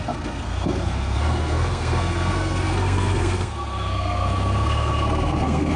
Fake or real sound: fake